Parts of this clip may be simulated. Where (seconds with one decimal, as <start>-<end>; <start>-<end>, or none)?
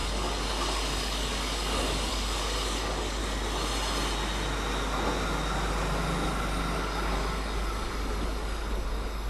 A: 0.0-3.2; 6.8-9.3